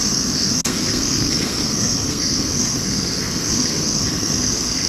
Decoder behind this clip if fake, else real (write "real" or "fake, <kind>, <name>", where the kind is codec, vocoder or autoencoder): fake, codec, SNAC